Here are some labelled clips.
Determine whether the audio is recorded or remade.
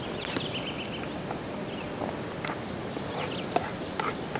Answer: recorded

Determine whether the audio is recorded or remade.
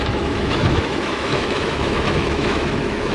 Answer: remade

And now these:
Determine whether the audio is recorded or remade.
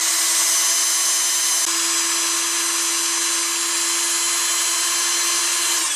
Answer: recorded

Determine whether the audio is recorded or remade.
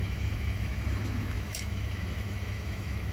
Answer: remade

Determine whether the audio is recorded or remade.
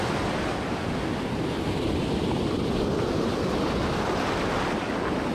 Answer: recorded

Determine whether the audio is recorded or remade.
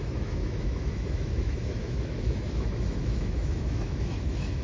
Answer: remade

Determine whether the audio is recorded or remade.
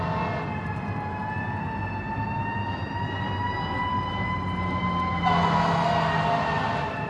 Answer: recorded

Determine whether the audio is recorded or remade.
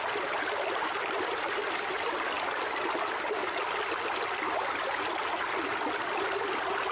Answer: recorded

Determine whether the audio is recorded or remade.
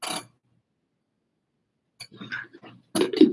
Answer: recorded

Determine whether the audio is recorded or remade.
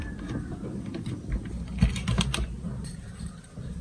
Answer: recorded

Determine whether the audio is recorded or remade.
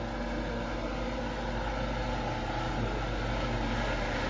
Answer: recorded